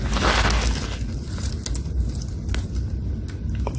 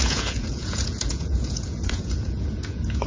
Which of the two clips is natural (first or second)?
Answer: first